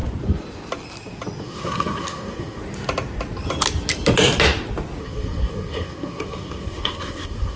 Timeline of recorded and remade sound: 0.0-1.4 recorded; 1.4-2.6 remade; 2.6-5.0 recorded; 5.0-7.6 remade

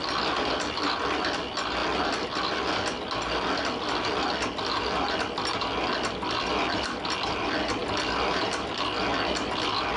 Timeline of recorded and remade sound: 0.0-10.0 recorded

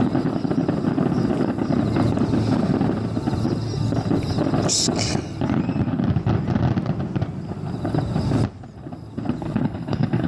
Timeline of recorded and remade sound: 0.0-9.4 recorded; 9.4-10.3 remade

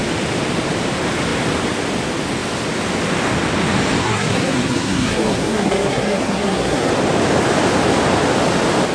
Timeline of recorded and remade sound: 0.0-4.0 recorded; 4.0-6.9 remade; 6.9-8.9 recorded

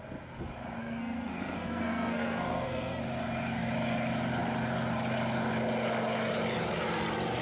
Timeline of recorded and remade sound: 0.0-0.8 recorded; 0.8-3.0 remade; 3.0-7.4 recorded

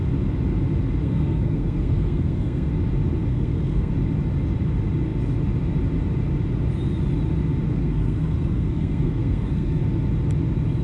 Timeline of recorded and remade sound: 0.0-1.0 recorded; 1.0-2.7 remade; 2.7-3.3 recorded; 3.3-3.9 remade; 3.9-7.7 recorded; 7.7-9.8 remade; 9.8-10.8 recorded